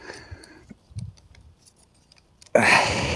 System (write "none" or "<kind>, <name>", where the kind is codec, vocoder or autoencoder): none